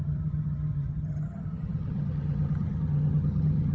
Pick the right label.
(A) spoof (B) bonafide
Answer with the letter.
A